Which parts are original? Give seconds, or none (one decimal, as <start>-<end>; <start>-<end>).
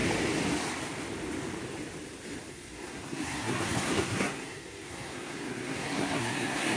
0.0-2.5